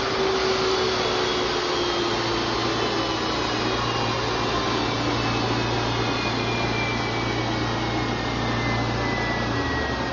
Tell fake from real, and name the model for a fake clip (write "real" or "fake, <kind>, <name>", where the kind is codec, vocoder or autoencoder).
real